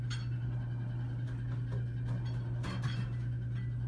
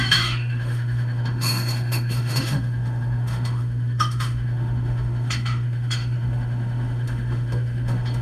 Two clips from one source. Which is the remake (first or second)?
second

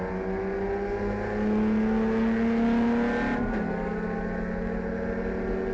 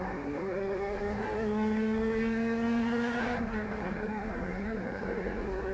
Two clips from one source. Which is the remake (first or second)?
second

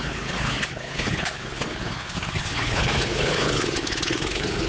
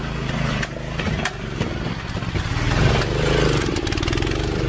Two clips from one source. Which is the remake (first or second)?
first